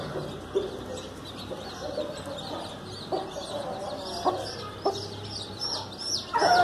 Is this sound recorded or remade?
recorded